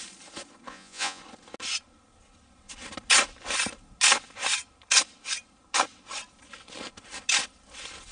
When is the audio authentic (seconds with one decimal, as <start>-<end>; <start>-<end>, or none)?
0.0-0.7; 1.2-8.1